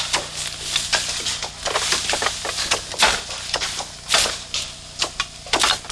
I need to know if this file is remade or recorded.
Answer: recorded